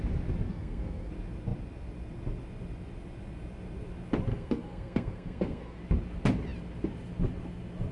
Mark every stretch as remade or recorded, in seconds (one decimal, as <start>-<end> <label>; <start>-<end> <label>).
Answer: 0.0-0.5 recorded; 0.5-1.1 remade; 1.1-4.3 recorded; 4.3-5.8 remade; 5.8-7.9 recorded